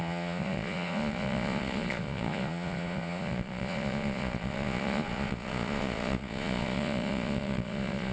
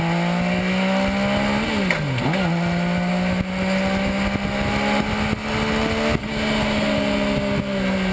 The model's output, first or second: first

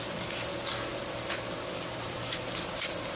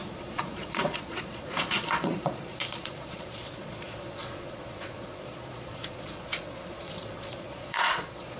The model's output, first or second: second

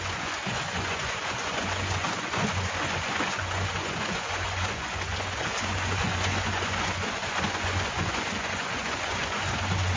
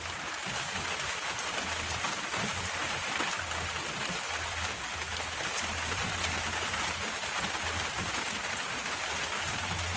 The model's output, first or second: first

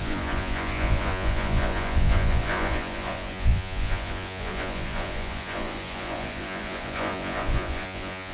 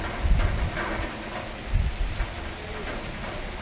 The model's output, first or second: first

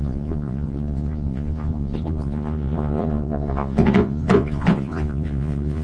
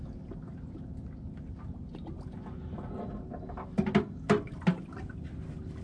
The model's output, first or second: first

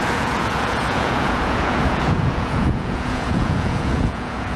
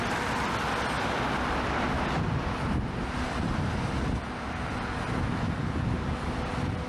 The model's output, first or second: first